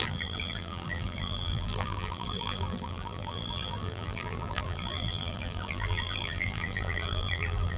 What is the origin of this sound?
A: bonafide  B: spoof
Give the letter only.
B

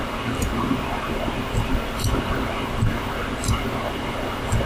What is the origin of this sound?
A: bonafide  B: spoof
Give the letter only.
A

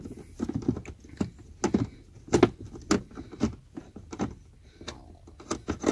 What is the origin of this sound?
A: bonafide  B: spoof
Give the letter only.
A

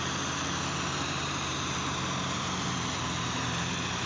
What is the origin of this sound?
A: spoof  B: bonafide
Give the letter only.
A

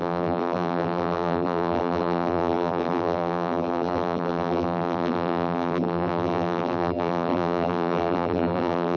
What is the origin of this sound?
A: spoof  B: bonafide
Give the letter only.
A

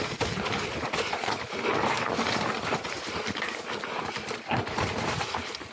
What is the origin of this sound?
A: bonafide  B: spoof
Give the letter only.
A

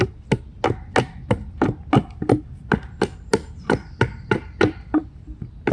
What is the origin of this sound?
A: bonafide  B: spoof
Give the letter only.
A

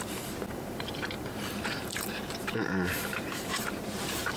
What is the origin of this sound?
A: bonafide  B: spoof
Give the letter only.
B